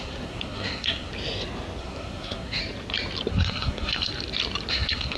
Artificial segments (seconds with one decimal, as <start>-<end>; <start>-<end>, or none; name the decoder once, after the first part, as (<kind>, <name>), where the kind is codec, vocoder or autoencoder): 0.0-1.1 (codec, SNAC); 1.8-2.6; 3.3-4.1; 4.7-5.2